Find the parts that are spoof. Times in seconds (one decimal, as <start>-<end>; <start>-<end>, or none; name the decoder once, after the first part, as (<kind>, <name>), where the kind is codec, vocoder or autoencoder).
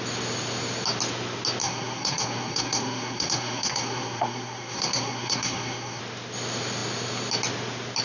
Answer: 1.6-6.0 (codec, SNAC)